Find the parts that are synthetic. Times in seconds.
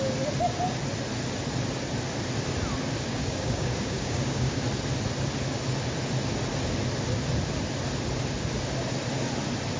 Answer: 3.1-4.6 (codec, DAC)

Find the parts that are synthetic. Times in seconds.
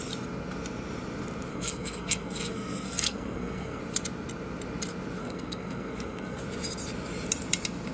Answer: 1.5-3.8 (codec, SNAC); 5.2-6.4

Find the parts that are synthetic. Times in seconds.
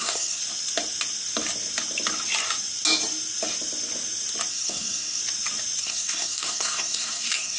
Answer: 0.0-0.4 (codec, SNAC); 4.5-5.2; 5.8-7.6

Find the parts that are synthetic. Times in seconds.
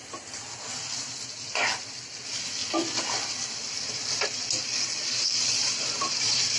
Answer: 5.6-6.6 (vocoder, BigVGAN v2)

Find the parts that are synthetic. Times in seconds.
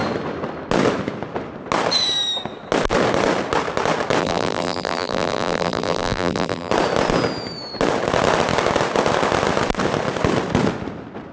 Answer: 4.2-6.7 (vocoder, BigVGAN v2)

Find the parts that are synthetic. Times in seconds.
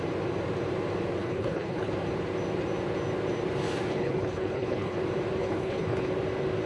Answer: 1.2-1.9 (codec, HILCodec); 3.9-5.0; 5.4-6.1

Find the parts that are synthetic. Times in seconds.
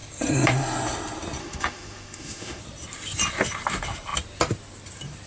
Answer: 1.4-2.6 (autoencoder, DAC-VAE)